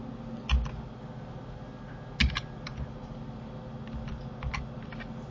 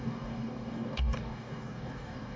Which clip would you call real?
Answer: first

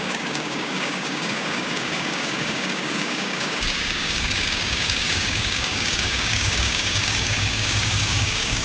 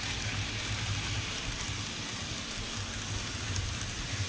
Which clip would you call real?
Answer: second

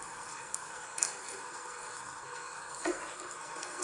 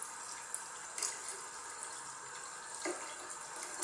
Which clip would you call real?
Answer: second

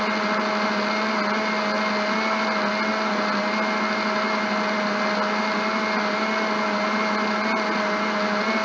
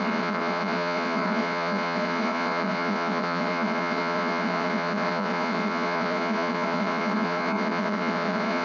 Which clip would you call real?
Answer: first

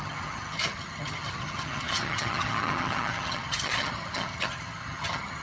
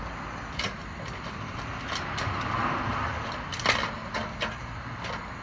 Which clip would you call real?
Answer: second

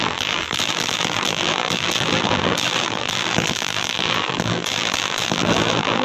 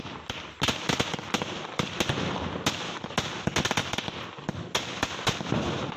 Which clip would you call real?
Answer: second